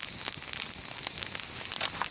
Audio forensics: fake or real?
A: real